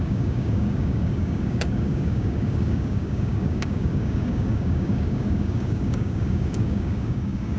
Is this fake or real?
fake